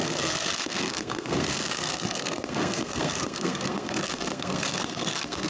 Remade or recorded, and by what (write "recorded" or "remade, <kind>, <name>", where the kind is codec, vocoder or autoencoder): remade, codec, SNAC